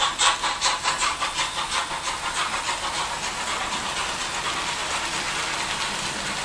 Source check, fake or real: real